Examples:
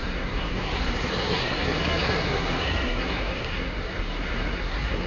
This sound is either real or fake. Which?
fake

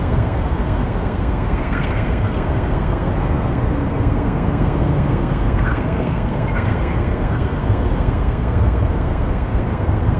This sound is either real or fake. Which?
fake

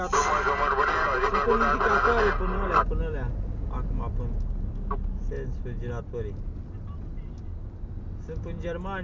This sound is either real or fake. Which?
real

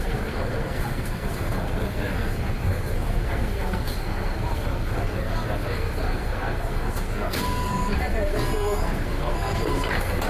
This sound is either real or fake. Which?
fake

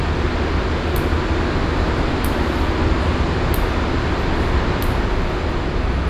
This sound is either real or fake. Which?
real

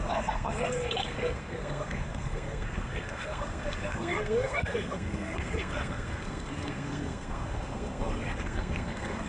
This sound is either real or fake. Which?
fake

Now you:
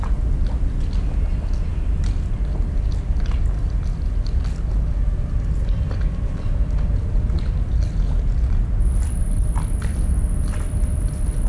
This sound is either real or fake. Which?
real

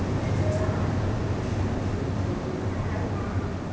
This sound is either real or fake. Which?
real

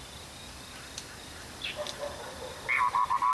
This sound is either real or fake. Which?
real